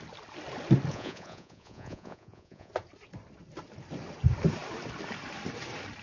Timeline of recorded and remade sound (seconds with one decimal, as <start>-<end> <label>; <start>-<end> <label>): 0.0-0.9 recorded; 0.9-2.7 remade; 2.7-6.0 recorded

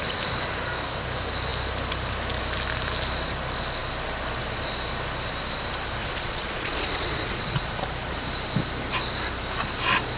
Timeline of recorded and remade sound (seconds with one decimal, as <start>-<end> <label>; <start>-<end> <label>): 0.0-6.0 recorded; 6.0-7.7 remade; 7.7-10.2 recorded

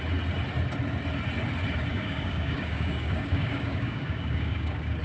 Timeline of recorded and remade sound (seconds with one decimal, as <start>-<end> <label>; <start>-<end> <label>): 0.0-1.9 recorded; 1.9-5.0 remade

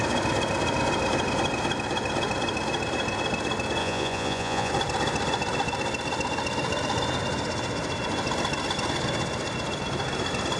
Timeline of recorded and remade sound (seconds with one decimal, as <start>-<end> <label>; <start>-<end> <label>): 0.0-3.8 recorded; 3.8-4.7 remade; 4.7-10.6 recorded

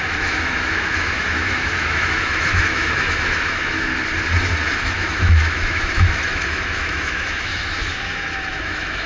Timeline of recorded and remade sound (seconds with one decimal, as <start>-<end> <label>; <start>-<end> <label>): 0.0-3.9 remade; 3.9-4.8 recorded; 4.8-9.1 remade

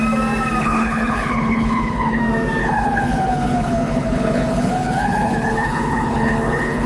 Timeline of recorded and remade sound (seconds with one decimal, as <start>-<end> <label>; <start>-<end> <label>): 0.0-0.6 recorded; 0.6-2.2 remade; 2.2-2.6 recorded; 2.6-6.9 remade

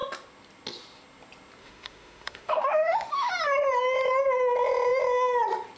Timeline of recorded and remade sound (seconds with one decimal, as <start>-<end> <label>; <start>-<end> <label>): 0.0-1.6 recorded; 1.6-3.3 remade; 3.3-5.8 recorded

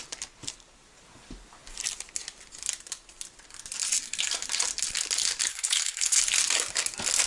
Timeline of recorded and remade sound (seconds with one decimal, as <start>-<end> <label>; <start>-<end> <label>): 0.0-5.5 recorded; 5.5-6.2 remade; 6.2-7.3 recorded